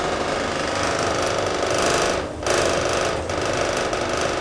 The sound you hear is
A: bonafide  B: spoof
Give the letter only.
A